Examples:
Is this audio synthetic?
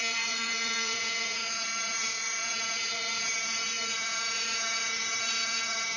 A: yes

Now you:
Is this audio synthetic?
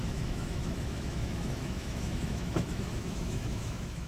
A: yes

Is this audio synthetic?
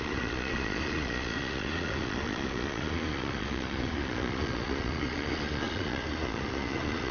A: yes